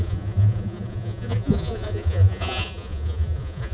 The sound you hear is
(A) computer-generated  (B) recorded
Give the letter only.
A